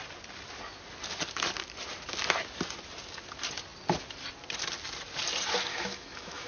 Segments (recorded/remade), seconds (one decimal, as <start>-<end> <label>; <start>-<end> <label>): 0.0-5.7 recorded; 5.7-6.5 remade